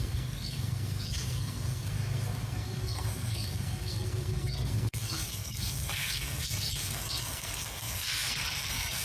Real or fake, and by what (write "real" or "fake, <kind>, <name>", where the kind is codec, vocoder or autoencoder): fake, codec, SNAC